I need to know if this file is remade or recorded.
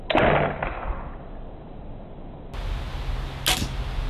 recorded